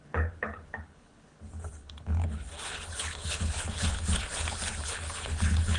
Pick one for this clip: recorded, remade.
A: remade